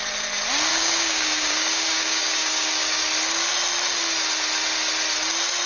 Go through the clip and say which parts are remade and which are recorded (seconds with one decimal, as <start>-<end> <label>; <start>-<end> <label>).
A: 0.0-0.7 recorded; 0.7-3.0 remade; 3.0-5.7 recorded